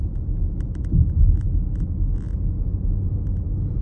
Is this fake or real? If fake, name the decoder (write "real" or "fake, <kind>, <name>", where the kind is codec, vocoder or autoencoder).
real